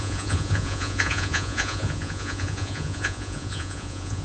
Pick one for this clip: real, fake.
fake